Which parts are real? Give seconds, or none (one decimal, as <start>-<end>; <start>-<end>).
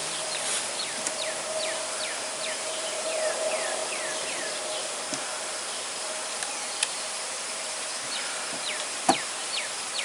0.0-1.1; 3.8-6.4